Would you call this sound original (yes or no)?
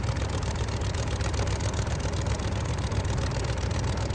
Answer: no